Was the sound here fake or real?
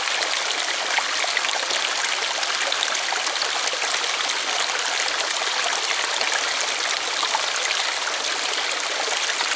real